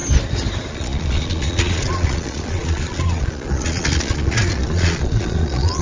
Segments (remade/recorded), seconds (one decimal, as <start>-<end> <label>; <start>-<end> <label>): 0.0-0.7 recorded; 0.7-5.8 remade